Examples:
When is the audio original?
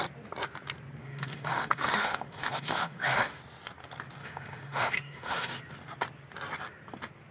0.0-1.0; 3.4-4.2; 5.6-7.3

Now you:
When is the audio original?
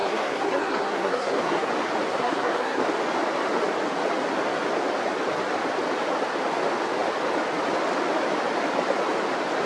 1.7-2.1; 2.8-9.7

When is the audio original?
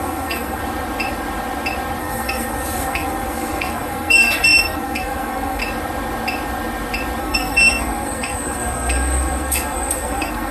0.6-2.0; 5.6-7.2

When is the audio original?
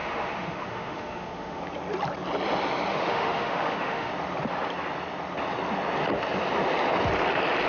1.6-2.9; 4.1-7.7